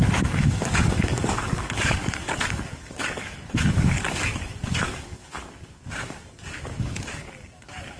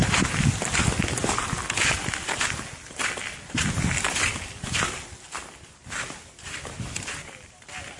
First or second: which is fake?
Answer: first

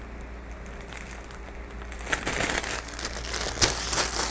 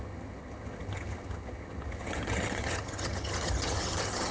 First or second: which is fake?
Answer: second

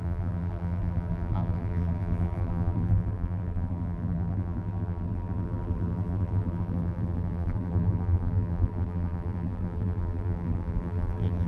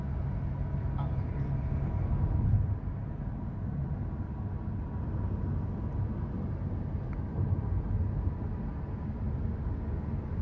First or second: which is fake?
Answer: first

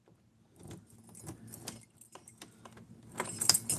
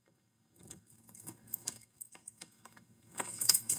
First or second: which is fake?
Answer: second